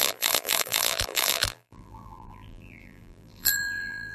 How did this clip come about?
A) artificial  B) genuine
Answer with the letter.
A